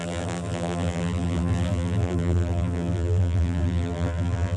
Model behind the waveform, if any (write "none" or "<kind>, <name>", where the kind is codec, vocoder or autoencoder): vocoder, BigVGAN v2